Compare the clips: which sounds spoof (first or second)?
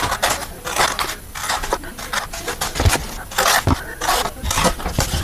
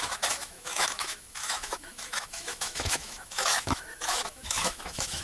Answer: second